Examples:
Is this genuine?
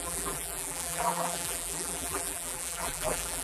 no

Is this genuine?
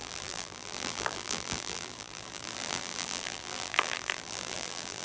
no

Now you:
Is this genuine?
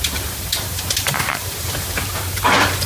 no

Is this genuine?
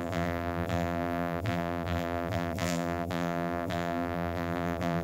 no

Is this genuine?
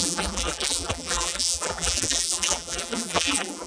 no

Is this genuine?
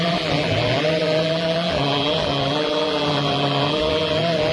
no